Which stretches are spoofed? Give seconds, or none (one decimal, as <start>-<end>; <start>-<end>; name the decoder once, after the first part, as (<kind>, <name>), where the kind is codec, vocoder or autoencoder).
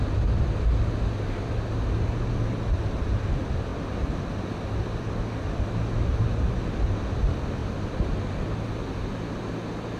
none